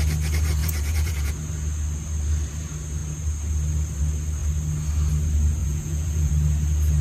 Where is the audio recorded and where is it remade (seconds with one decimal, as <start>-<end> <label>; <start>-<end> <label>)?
0.0-0.6 recorded; 0.6-1.3 remade; 1.3-5.6 recorded; 5.6-6.3 remade; 6.3-7.0 recorded